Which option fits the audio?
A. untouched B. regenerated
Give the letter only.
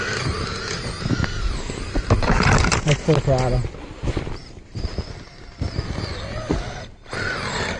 A